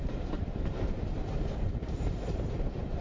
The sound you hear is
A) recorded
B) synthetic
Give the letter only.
B